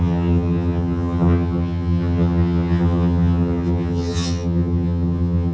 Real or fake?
fake